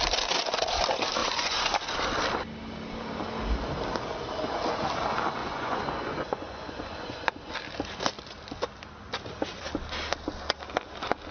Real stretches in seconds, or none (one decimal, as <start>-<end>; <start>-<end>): 0.0-1.2; 1.7-5.4; 7.5-11.3